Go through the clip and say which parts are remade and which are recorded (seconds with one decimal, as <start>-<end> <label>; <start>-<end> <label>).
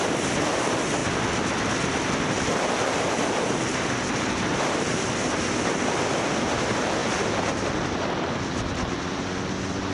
0.0-9.9 recorded